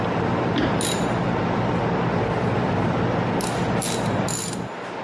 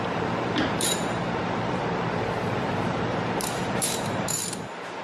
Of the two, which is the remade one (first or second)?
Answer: second